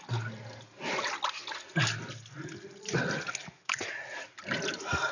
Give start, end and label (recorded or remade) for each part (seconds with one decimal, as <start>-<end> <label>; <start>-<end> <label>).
0.0-3.4 recorded; 3.4-3.9 remade; 3.9-5.1 recorded